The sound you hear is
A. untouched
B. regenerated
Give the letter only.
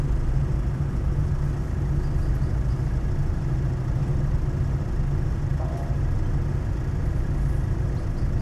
A